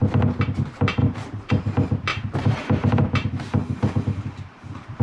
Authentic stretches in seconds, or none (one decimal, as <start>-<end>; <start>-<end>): 0.0-1.0; 1.5-2.1

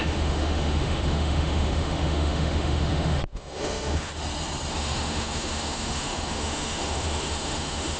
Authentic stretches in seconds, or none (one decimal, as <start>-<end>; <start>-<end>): 4.1-4.7

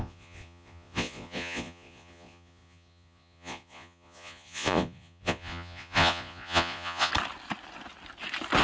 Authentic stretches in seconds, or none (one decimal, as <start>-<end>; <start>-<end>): 7.1-8.6